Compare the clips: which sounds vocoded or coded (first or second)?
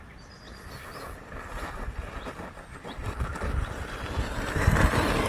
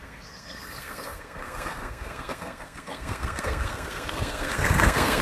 second